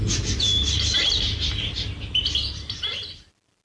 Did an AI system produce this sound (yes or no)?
yes